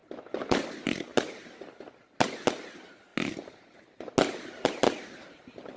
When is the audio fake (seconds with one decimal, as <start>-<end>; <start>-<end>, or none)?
none